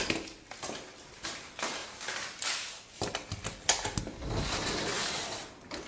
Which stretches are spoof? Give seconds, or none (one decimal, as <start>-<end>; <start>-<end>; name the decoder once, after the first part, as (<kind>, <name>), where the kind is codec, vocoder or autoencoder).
none